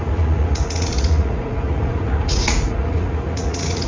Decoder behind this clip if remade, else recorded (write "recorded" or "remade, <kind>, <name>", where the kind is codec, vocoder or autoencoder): remade, vocoder, Vocos